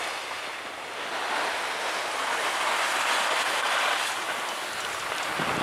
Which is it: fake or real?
real